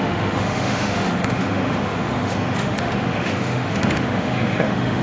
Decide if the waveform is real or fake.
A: fake